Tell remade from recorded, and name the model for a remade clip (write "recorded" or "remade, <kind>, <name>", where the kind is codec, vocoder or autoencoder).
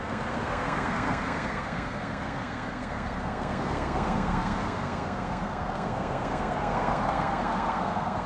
remade, codec, SNAC